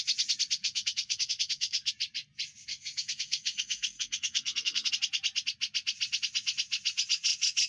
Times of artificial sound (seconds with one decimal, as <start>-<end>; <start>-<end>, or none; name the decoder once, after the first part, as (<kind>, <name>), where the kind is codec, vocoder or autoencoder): 0.6-1.9 (codec, SNAC); 2.7-4.9